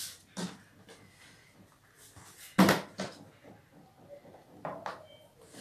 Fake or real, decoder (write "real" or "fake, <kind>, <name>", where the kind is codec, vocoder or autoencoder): real